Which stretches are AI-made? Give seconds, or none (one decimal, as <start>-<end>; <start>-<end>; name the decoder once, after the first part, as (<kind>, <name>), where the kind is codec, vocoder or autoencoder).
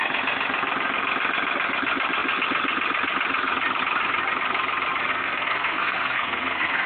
5.1-6.9 (codec, SNAC)